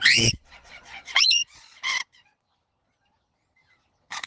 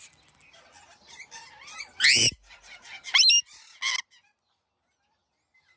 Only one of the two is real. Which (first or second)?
second